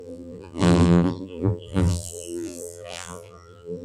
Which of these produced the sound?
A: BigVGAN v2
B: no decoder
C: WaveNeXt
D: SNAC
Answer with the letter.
A